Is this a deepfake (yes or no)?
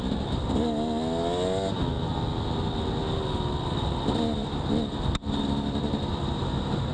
no